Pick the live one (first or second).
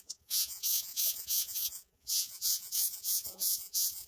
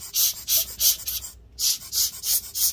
second